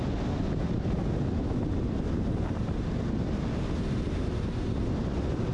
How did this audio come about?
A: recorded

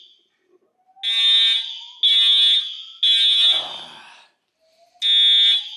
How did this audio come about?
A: recorded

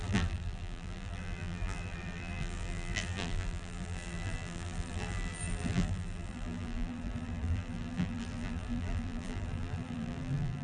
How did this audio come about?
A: remade